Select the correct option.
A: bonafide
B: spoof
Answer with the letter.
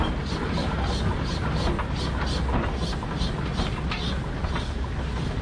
A